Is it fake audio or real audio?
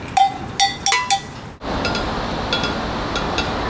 real